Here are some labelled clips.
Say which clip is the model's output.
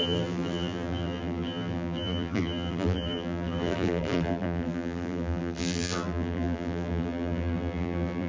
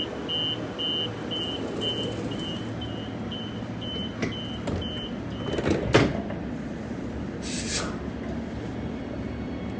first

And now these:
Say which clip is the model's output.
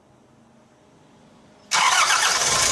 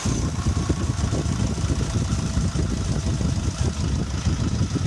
second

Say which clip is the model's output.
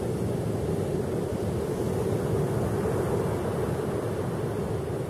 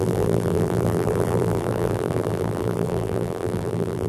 second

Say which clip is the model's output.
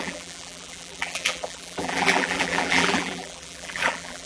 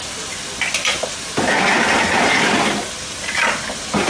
first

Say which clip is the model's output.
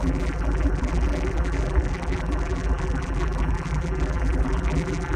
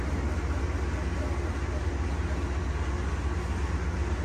first